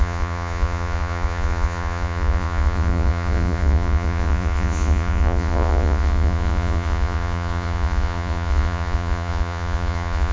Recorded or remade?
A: remade